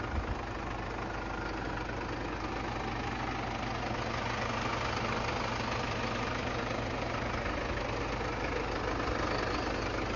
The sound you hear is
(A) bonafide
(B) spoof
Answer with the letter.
A